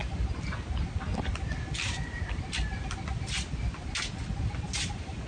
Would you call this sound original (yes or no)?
yes